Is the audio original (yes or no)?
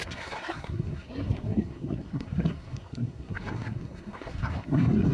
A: no